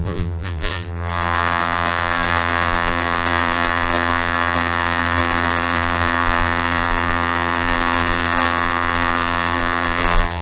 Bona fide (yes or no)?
no